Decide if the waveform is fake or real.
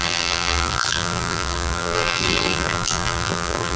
fake